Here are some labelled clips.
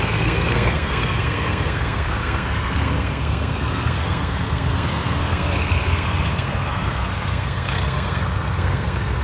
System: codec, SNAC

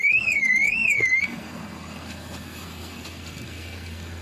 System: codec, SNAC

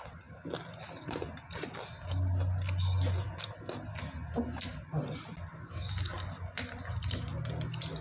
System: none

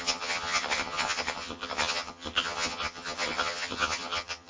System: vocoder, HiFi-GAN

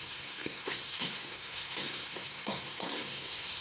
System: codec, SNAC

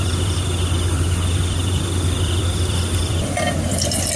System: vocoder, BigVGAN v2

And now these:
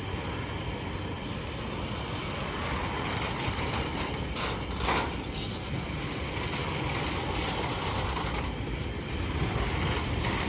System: none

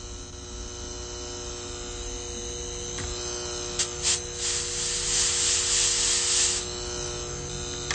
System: none